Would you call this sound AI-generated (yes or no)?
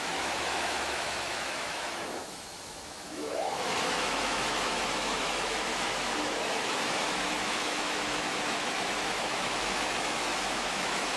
yes